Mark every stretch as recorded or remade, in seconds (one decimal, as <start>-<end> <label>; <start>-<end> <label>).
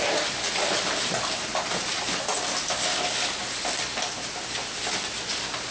0.0-5.7 recorded